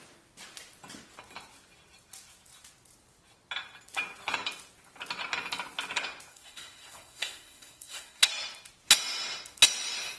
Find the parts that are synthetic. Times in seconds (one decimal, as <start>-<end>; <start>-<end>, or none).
6.3-8.3